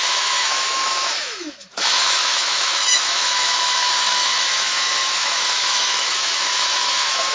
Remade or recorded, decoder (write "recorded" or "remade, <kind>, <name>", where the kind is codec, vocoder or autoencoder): remade, autoencoder, DAC-VAE